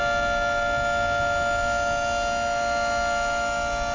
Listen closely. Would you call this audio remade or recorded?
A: recorded